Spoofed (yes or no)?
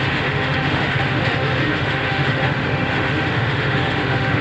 yes